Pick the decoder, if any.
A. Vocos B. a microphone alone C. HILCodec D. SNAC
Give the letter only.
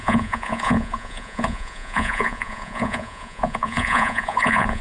A